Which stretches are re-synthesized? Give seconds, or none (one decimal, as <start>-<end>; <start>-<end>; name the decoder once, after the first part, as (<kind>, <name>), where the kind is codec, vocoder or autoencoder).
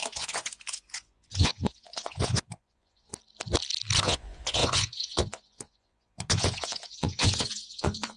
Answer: 0.0-3.1 (vocoder, Vocos); 4.0-8.2